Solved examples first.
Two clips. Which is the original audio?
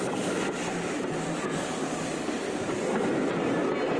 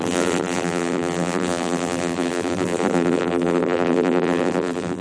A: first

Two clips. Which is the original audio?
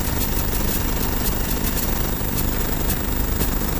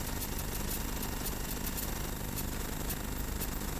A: second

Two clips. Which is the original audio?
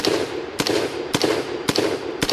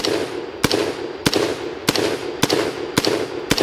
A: second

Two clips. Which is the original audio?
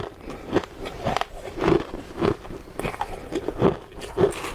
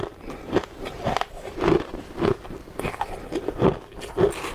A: second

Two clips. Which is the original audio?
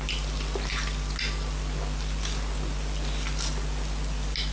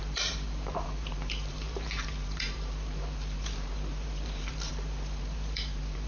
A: first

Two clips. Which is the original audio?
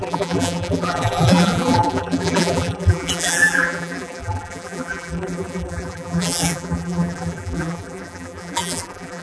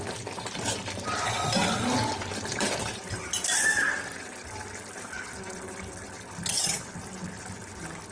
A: second